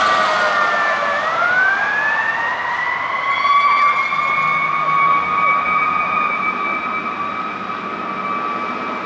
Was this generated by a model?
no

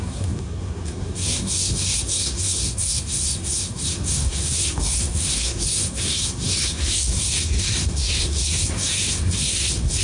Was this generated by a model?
yes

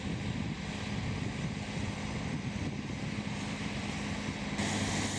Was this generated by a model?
no